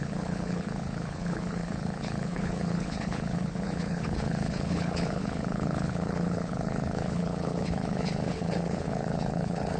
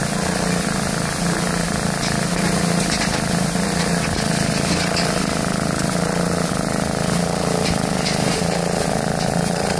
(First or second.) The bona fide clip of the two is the second